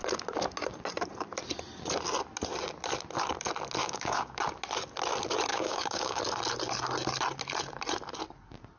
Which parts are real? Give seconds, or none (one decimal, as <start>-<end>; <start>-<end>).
0.0-3.8; 4.4-5.5; 6.2-8.8